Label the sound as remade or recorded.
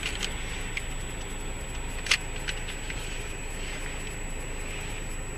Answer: recorded